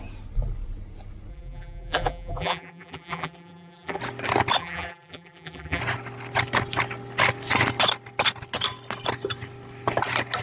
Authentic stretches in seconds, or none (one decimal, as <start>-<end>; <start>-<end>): 0.0-1.3; 4.0-4.6; 5.8-10.4